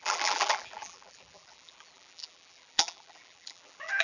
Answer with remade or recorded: remade